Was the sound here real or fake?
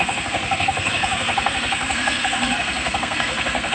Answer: fake